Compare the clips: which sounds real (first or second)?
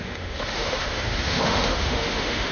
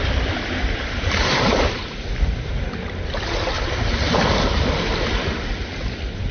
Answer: second